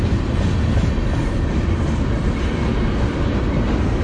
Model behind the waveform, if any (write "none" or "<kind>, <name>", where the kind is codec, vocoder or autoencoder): none